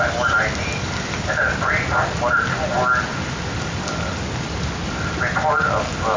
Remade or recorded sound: recorded